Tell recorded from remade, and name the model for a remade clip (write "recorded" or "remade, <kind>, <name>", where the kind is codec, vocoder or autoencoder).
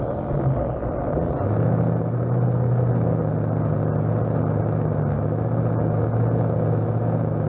recorded